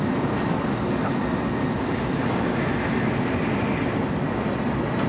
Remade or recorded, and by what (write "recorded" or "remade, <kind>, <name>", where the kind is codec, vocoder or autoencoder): recorded